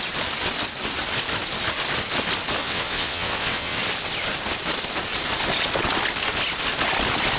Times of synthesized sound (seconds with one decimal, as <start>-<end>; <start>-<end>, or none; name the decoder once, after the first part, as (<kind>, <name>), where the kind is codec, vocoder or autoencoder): 2.6-3.8 (vocoder, WaveNeXt)